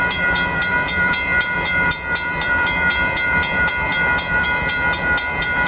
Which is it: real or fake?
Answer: fake